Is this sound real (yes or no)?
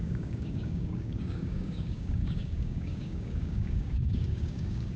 no